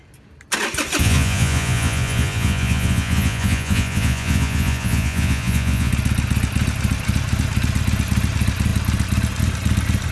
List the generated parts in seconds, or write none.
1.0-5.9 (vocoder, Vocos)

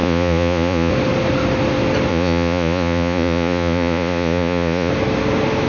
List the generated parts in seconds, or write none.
0.0-0.9 (vocoder, Vocos); 2.1-4.9